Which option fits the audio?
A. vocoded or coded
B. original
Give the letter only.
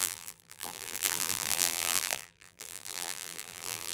A